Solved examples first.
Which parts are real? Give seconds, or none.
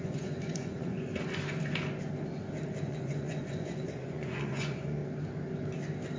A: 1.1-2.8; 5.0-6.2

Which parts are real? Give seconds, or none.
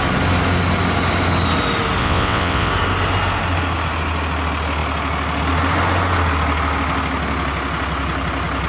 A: 0.0-2.0; 2.7-8.7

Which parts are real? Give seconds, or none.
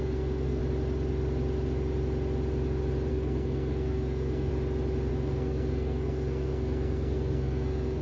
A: 0.6-3.1; 4.5-5.1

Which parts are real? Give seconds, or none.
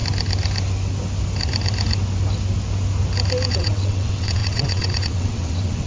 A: 0.0-3.5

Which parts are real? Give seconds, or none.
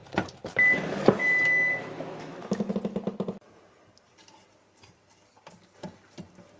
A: 0.0-1.8; 2.7-6.6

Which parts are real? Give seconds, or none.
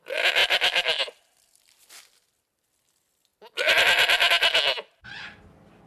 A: 0.0-5.9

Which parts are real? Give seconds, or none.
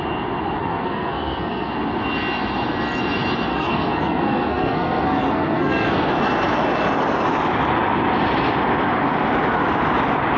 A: 0.0-0.6; 1.7-3.5; 6.1-10.4